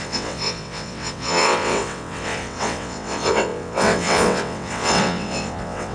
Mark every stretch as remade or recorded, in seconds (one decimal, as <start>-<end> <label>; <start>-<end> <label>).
0.0-5.9 remade